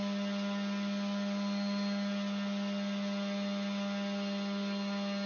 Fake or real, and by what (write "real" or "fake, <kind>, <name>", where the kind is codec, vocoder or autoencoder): real